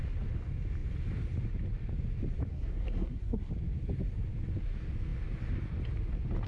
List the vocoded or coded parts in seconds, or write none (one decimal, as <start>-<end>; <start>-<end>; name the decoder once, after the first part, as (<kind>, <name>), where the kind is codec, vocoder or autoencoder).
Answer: 2.5-3.5 (codec, SNAC)